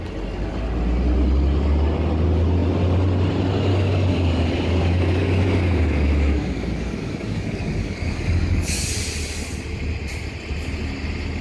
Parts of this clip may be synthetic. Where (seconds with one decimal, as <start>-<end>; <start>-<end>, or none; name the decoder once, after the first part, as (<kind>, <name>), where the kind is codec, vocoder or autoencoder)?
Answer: 3.7-8.9 (codec, DAC)